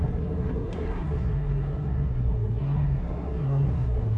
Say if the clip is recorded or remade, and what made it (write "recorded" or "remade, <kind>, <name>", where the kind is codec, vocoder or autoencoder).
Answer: remade, codec, SNAC